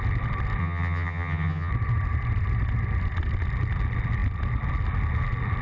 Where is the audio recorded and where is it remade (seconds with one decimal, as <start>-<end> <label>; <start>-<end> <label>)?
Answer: 0.0-0.6 recorded; 0.6-1.7 remade; 1.7-5.6 recorded